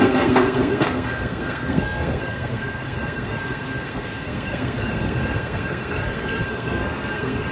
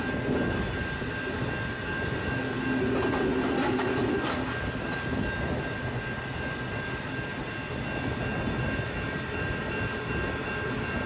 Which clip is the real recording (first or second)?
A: second